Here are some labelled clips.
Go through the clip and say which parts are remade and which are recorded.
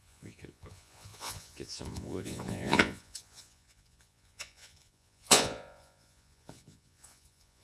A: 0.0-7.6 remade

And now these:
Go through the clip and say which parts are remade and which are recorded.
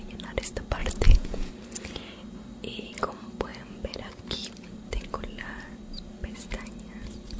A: 0.0-0.8 recorded; 0.8-1.5 remade; 1.5-7.4 recorded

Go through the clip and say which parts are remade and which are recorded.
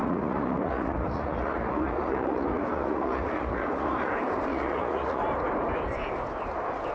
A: 0.0-4.1 remade; 4.1-4.5 recorded; 4.5-5.2 remade; 5.2-6.9 recorded